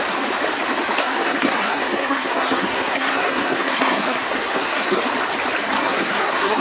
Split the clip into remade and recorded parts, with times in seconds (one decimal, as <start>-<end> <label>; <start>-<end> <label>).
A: 0.0-1.0 recorded; 1.0-5.0 remade; 5.0-5.8 recorded; 5.8-6.6 remade